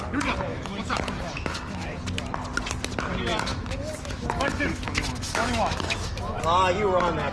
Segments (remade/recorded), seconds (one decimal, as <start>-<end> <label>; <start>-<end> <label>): 0.0-0.5 recorded; 0.5-2.0 remade; 2.0-3.5 recorded; 3.5-6.4 remade; 6.4-7.3 recorded